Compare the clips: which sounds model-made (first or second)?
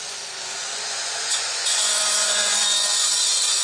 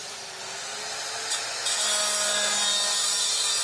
first